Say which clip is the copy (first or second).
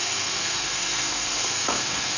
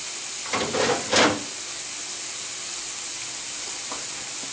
first